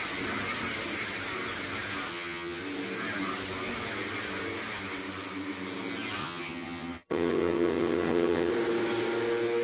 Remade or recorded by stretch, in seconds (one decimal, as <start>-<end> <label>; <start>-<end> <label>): 0.0-2.1 recorded; 2.1-2.6 remade; 2.6-6.2 recorded; 6.2-8.5 remade; 8.5-9.6 recorded